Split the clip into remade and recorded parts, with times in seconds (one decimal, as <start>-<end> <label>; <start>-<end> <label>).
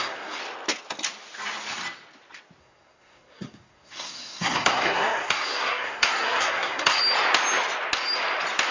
0.0-0.4 remade; 0.4-2.6 recorded; 2.6-7.0 remade; 7.0-8.7 recorded